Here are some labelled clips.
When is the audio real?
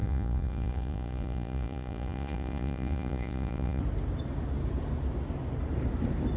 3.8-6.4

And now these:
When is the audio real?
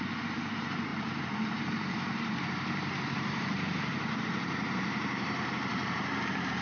none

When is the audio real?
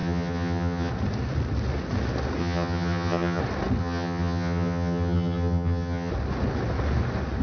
0.9-2.4; 3.4-3.8; 6.1-7.4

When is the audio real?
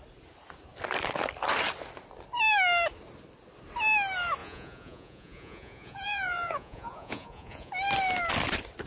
0.0-4.4; 7.7-8.9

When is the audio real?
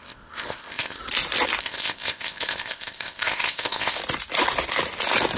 1.0-1.6; 4.0-5.4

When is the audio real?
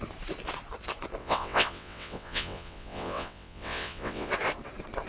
0.0-1.2; 4.3-5.1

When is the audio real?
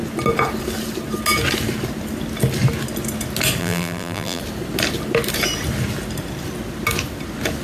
0.0-3.6; 4.4-7.6